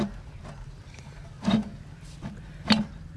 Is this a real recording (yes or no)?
yes